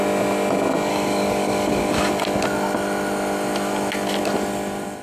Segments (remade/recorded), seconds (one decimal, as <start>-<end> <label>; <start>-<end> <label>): 0.0-0.9 recorded; 0.9-2.1 remade; 2.1-5.0 recorded